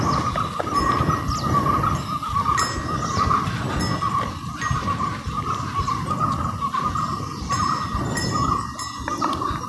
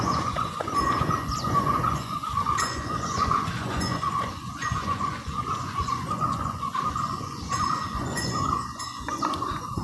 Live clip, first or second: first